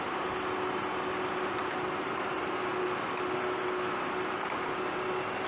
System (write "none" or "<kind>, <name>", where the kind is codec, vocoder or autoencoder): none